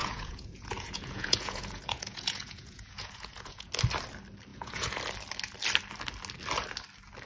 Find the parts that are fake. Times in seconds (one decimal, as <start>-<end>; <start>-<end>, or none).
0.0-3.7; 4.5-5.0